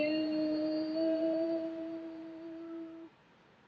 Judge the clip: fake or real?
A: fake